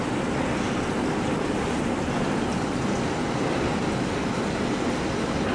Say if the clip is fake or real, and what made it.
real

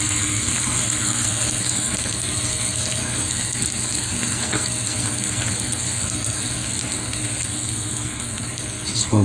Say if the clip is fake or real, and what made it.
fake, codec, SNAC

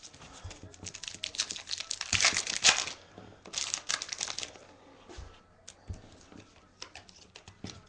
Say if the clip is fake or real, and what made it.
real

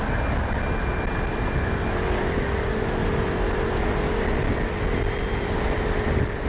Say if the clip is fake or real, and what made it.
real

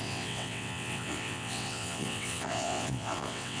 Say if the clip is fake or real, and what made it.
fake, vocoder, WaveNeXt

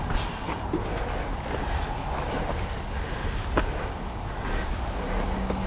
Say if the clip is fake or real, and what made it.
real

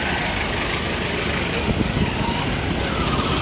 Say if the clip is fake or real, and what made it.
real